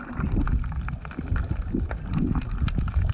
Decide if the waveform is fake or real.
real